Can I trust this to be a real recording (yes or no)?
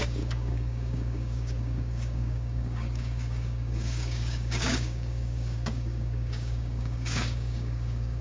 no